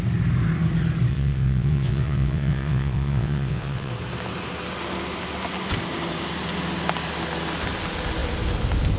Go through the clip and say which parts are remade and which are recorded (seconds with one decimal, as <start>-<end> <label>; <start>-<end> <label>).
0.0-1.1 recorded; 1.1-3.9 remade; 3.9-9.0 recorded